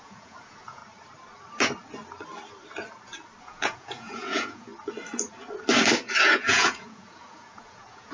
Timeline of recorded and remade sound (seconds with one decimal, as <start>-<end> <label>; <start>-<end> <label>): 0.0-0.8 remade; 0.8-3.4 recorded; 3.4-4.7 remade; 4.7-6.2 recorded; 6.2-8.1 remade